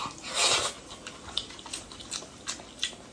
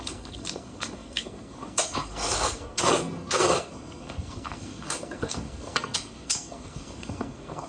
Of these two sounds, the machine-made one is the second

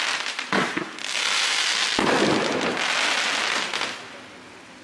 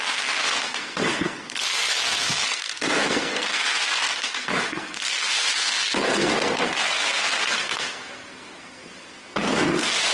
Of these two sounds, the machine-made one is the second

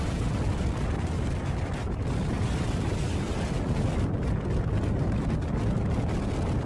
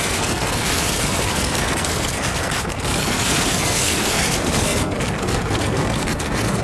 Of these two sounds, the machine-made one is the second